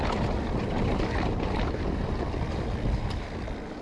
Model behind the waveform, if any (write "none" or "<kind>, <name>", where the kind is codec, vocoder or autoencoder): none